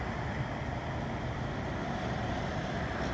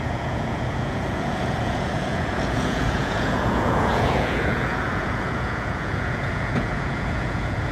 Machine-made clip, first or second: second